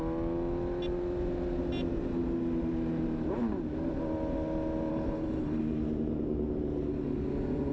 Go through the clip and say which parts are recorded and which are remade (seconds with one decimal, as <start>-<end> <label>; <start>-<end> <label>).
0.0-4.9 recorded; 4.9-5.6 remade; 5.6-7.7 recorded